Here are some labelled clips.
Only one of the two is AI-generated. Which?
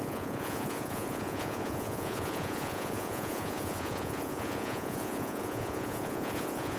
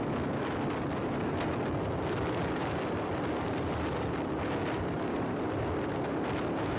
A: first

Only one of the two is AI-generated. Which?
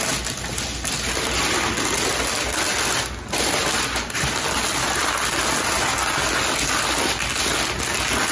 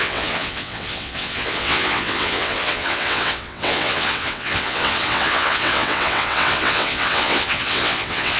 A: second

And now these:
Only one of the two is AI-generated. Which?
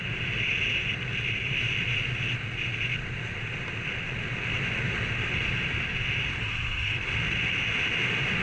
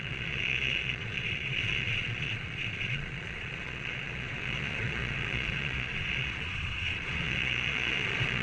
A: second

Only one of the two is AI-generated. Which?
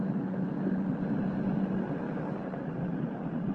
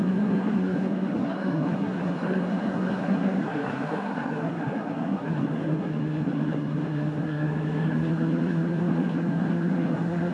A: second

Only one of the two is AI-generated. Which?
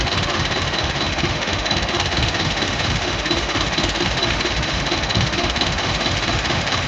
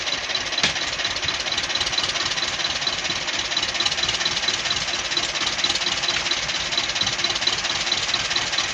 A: first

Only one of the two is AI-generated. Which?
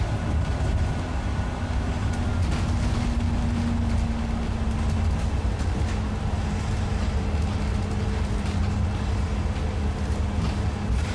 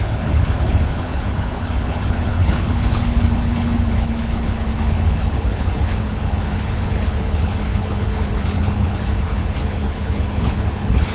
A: second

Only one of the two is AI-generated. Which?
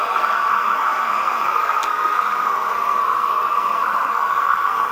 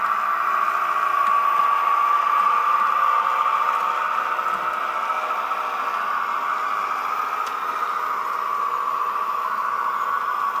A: first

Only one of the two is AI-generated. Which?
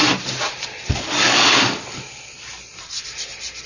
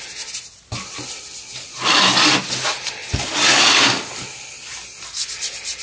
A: first